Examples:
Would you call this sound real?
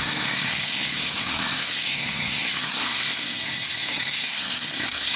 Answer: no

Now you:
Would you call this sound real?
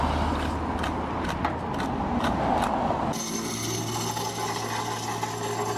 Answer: yes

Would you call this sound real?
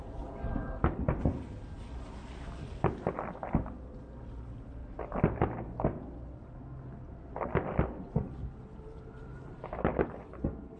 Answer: yes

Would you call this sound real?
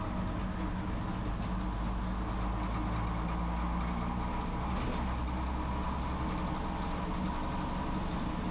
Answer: yes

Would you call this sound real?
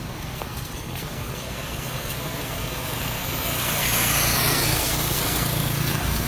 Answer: no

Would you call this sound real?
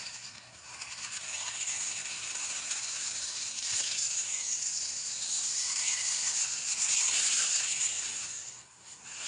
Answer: no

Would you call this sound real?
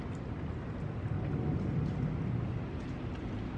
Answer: yes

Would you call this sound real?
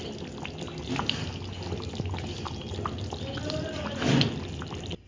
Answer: yes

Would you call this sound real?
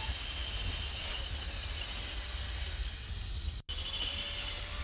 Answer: yes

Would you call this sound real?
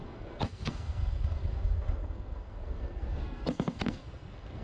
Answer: no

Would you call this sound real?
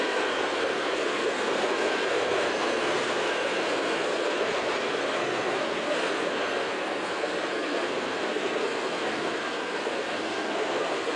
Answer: no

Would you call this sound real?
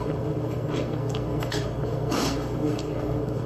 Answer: no